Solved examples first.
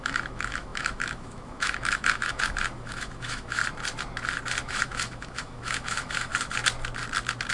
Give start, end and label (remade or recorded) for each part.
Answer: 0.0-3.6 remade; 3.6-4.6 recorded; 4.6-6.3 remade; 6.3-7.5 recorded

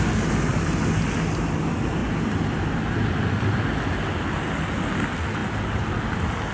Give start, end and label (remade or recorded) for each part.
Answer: 0.0-6.5 recorded

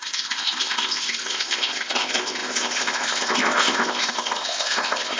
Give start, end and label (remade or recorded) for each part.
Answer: 0.0-5.2 remade